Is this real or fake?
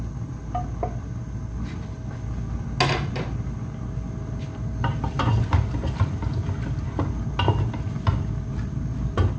real